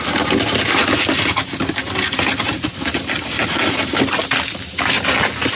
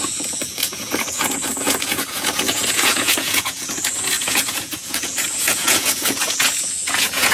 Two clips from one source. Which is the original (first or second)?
first